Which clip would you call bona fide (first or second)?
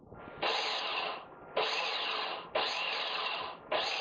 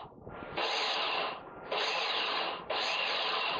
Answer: first